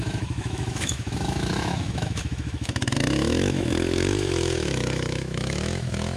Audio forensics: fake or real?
fake